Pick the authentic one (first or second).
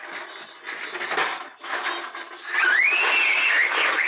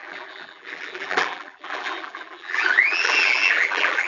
first